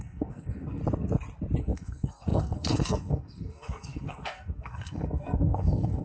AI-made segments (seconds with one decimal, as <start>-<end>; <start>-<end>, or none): 0.0-0.8; 1.6-6.0